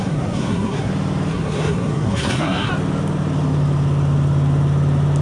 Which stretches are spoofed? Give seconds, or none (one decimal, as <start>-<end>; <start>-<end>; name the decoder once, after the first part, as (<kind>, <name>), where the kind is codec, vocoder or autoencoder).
0.0-0.9 (codec, SNAC); 1.3-2.7